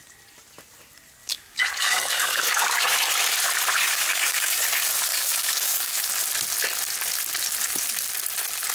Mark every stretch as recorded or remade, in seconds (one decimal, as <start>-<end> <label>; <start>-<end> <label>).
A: 0.0-1.2 recorded; 1.2-3.1 remade; 3.1-3.8 recorded; 3.8-4.6 remade; 4.6-5.1 recorded; 5.1-6.0 remade; 6.0-8.7 recorded